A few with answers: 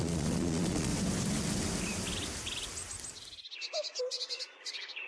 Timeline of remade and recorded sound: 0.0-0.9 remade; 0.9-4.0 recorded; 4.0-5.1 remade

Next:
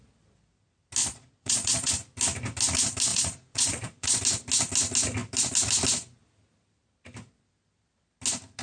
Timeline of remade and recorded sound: 0.0-1.0 recorded; 1.0-1.9 remade; 1.9-3.1 recorded; 3.1-4.2 remade; 4.2-8.6 recorded

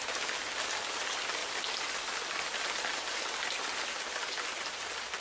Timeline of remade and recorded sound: 0.0-5.2 recorded

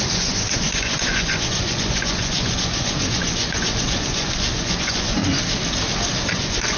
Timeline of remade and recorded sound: 0.0-5.2 remade; 5.2-6.3 recorded; 6.3-6.8 remade

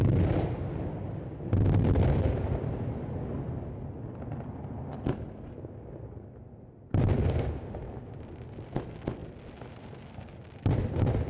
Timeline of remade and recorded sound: 0.0-11.3 recorded